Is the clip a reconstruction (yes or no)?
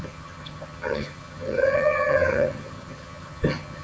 yes